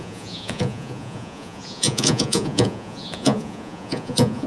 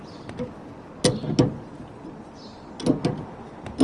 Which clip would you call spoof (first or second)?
first